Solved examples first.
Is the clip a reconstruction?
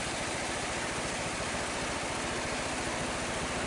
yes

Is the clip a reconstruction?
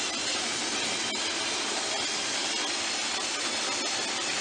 no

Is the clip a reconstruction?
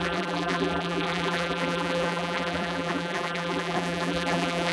yes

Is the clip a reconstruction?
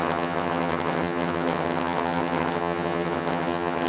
yes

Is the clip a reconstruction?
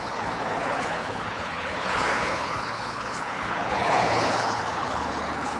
yes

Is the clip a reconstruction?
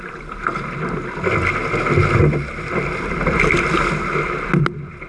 no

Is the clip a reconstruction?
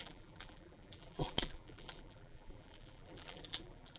yes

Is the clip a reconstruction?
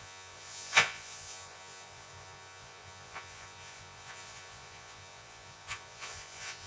yes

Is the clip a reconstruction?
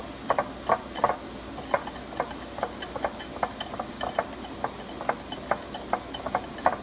no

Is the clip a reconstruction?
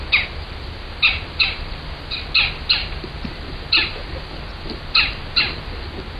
no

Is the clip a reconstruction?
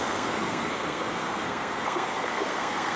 yes